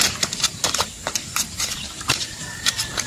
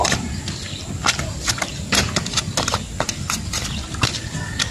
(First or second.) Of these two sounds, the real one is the second